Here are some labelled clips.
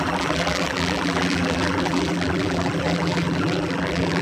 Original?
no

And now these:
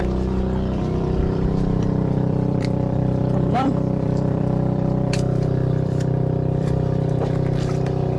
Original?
no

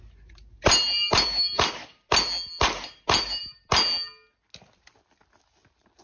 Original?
yes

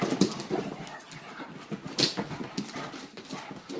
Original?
yes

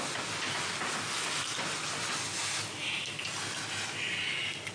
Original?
yes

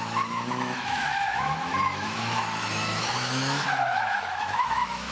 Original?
no